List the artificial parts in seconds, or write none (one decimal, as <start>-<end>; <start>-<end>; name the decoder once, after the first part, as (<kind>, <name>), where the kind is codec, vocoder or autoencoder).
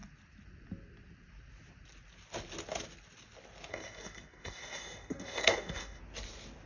3.7-6.0 (codec, SNAC)